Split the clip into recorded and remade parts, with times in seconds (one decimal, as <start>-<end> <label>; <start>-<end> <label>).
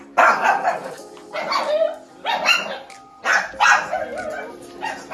0.0-5.1 recorded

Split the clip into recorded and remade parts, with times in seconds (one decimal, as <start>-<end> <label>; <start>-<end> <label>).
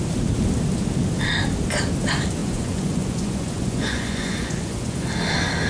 0.0-2.4 recorded; 2.4-5.1 remade; 5.1-5.7 recorded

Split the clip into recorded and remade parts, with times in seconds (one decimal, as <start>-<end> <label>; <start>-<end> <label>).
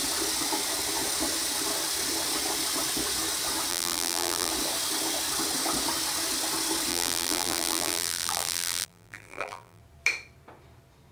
0.0-3.7 recorded; 3.7-4.5 remade; 4.5-6.9 recorded; 6.9-9.8 remade; 9.8-11.1 recorded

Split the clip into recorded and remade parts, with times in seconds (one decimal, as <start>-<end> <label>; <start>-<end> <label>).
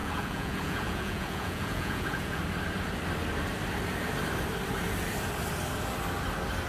0.0-2.4 remade; 2.4-6.7 recorded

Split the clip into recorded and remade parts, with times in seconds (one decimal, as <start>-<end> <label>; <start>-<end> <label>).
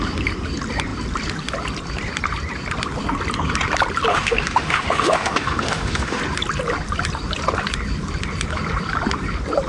0.0-4.1 recorded; 4.1-6.2 remade; 6.2-9.7 recorded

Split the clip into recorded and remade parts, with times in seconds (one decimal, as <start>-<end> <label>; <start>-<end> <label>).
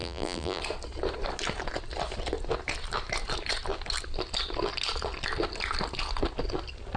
0.0-0.6 remade; 0.6-7.0 recorded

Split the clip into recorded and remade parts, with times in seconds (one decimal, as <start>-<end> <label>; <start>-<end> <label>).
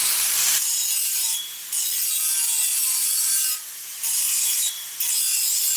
0.0-1.4 remade; 1.4-2.7 recorded; 2.7-4.9 remade; 4.9-5.8 recorded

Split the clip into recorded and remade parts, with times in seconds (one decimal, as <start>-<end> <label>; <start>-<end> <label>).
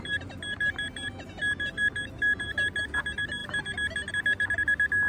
0.0-5.1 recorded